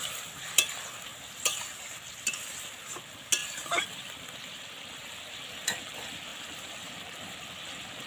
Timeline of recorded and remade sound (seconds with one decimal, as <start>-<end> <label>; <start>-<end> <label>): 0.0-3.4 recorded; 3.4-5.1 remade; 5.1-6.3 recorded; 6.3-6.9 remade; 6.9-8.1 recorded